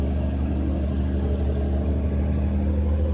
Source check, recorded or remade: recorded